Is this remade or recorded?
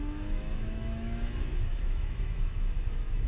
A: remade